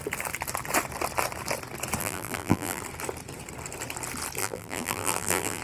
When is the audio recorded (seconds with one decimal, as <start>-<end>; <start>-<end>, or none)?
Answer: 0.0-2.0; 2.8-4.4